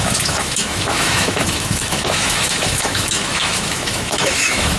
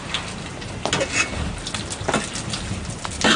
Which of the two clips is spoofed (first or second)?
first